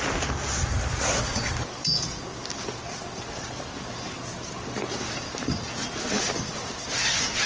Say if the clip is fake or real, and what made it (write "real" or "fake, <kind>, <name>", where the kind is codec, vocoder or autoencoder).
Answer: real